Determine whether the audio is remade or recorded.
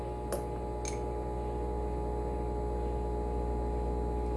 recorded